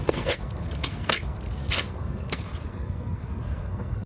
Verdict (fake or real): fake